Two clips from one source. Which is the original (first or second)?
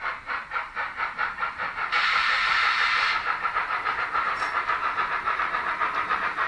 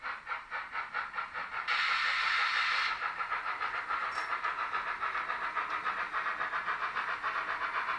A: second